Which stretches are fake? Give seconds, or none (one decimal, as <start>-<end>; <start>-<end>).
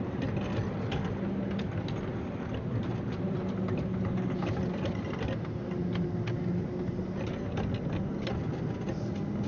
none